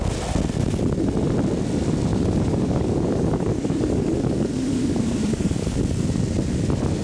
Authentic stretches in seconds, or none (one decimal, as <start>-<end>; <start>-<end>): 0.0-2.1; 5.8-7.0